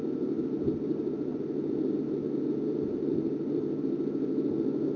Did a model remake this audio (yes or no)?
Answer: no